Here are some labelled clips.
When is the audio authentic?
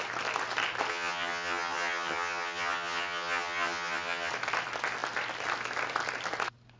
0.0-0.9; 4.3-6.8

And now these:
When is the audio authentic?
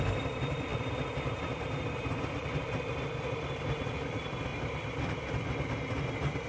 0.0-6.5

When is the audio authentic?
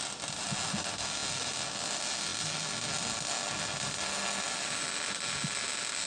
0.0-6.1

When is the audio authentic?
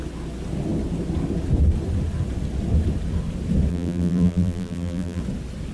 0.0-3.7; 5.2-5.7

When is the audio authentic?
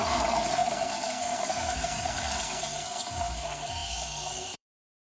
none